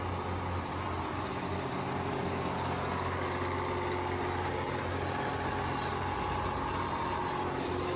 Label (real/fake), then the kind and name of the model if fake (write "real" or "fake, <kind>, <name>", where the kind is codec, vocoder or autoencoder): real